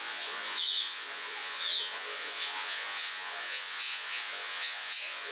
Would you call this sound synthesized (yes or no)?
yes